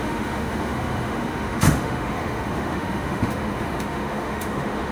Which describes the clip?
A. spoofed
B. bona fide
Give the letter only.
A